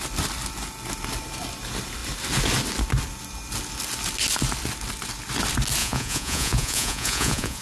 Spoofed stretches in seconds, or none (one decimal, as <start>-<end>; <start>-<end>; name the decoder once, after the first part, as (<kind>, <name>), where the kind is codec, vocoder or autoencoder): 5.8-7.6 (vocoder, Vocos)